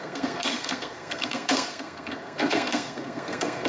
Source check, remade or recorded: remade